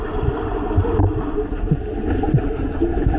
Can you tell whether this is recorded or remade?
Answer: recorded